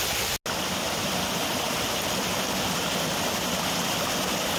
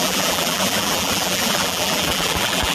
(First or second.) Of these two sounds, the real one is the first